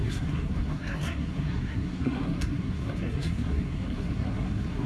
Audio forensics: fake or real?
fake